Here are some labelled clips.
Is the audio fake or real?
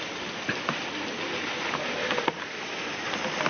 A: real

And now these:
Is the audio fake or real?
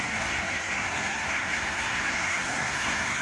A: fake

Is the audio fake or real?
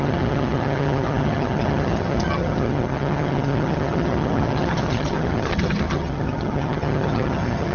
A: fake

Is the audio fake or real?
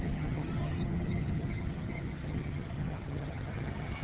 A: fake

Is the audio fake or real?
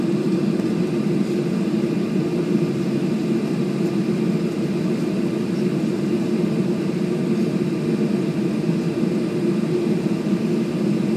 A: real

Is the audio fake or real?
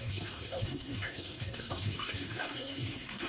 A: fake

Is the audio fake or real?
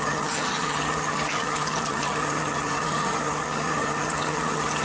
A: fake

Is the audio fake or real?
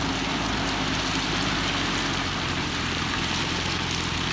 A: real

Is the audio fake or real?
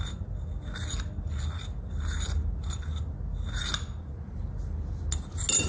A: real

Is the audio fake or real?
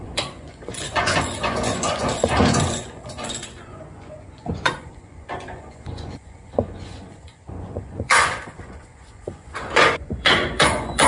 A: fake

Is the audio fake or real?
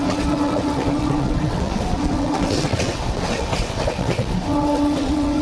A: fake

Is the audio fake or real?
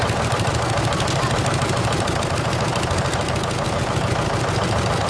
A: real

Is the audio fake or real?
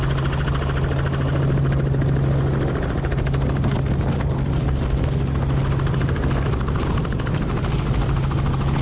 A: real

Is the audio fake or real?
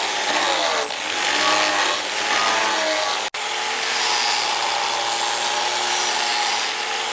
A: real